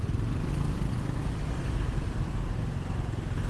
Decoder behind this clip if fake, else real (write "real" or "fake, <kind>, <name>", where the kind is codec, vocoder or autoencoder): real